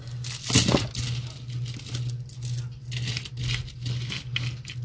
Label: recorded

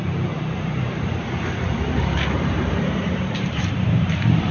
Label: remade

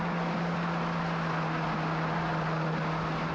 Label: recorded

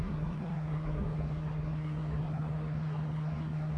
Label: remade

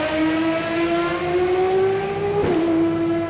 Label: recorded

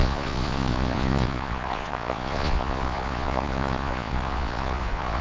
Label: remade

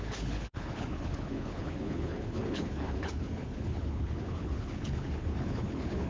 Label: remade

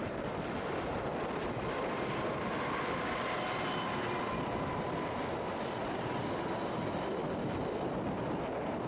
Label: recorded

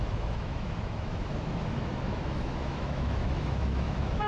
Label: remade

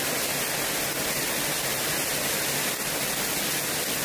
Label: recorded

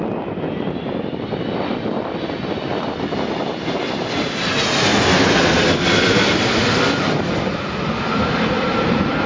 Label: remade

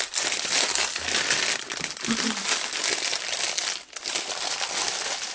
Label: recorded